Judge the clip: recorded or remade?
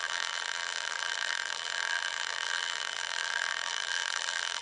remade